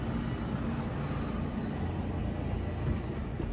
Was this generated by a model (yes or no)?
no